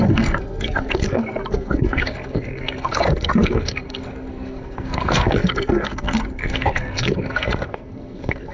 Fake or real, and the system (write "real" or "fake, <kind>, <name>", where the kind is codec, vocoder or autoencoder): fake, codec, SNAC